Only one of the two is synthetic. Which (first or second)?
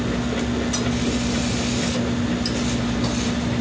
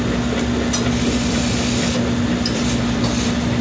second